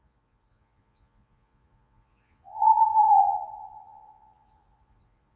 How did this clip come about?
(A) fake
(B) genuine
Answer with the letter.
A